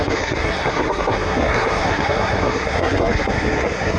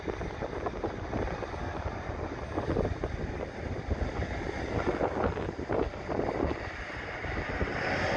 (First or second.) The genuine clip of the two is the second